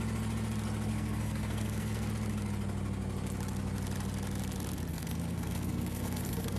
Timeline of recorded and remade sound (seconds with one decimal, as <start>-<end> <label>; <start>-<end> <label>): 0.0-0.9 recorded; 0.9-2.1 remade; 2.1-4.9 recorded; 4.9-6.6 remade